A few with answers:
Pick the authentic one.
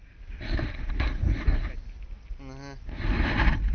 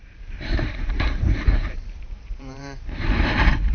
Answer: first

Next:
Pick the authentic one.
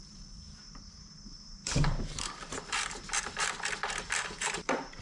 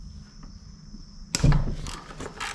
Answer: second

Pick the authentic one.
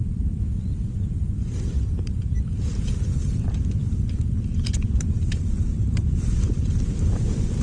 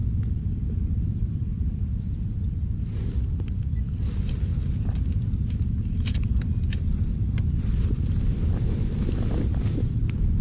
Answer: second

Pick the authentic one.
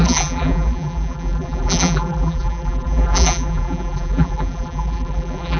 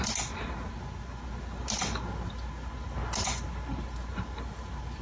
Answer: second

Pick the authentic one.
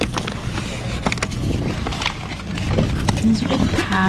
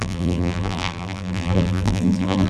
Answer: first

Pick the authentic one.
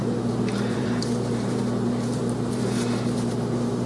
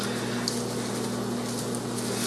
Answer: second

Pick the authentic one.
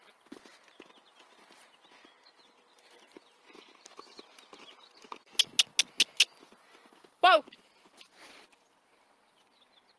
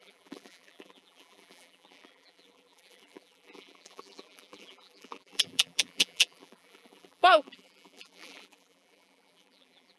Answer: first